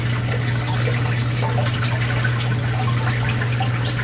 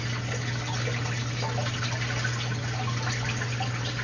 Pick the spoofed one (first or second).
first